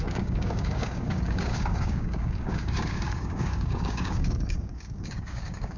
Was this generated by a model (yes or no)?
yes